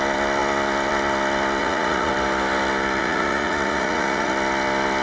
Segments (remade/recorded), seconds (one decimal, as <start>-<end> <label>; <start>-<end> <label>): 0.0-1.6 recorded; 1.6-2.1 remade; 2.1-3.0 recorded; 3.0-4.3 remade; 4.3-5.0 recorded